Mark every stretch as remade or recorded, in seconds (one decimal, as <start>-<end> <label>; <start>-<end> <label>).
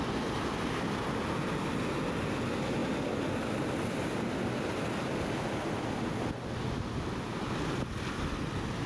0.0-8.9 recorded